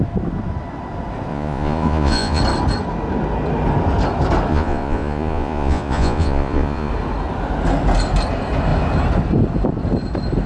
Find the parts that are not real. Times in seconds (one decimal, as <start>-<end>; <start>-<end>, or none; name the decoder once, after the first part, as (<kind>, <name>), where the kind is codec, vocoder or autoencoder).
1.3-2.4 (vocoder, Vocos); 4.5-6.9